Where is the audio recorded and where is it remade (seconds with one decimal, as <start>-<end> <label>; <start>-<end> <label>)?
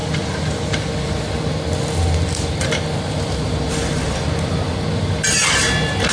0.0-6.1 recorded